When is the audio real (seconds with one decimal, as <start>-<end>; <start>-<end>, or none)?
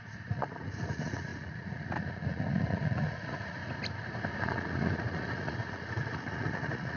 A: 3.6-4.3